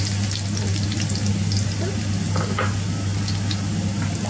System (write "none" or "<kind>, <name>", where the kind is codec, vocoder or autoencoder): none